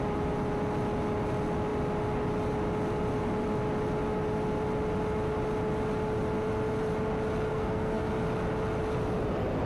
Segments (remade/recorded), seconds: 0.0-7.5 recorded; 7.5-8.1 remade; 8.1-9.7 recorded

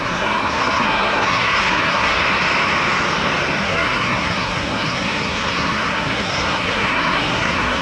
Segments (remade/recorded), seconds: 0.0-2.2 remade; 2.2-3.6 recorded; 3.6-7.8 remade